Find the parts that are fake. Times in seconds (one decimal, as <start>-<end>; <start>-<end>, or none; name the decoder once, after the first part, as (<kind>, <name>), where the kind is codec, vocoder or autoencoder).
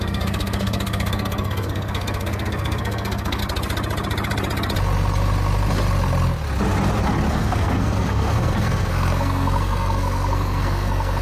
0.0-3.4 (codec, SNAC); 7.3-11.2